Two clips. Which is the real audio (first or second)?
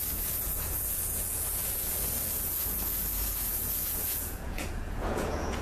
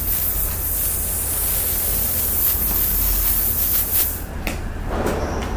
second